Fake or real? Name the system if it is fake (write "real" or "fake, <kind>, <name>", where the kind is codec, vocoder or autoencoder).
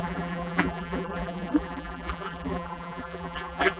fake, vocoder, BigVGAN v2